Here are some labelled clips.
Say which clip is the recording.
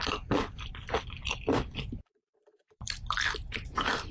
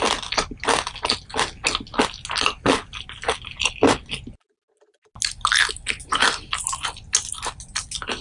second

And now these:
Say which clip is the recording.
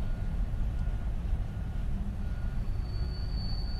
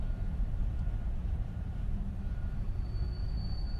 first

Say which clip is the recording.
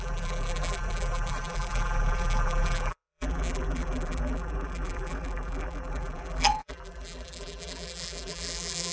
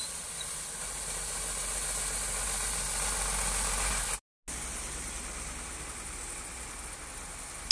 second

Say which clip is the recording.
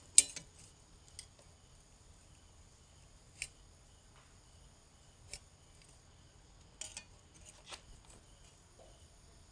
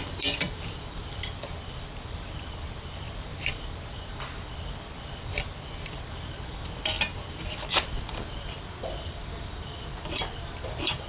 first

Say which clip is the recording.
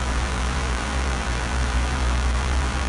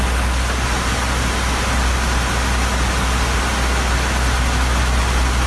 second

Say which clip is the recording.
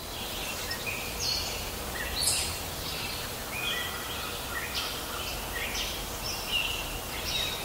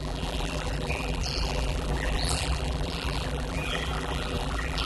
first